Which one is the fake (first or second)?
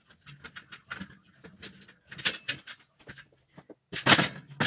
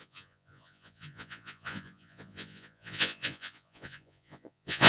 second